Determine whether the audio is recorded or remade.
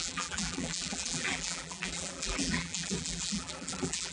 remade